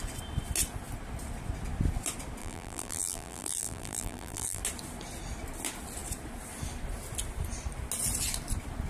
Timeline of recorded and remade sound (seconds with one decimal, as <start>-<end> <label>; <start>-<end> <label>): 0.0-2.4 recorded; 2.4-4.6 remade; 4.6-8.9 recorded